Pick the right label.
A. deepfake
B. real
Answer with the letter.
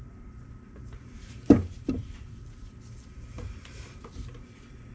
A